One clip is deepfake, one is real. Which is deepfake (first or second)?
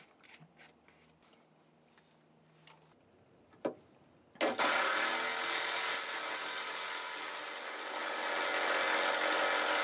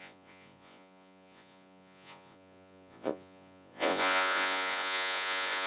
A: second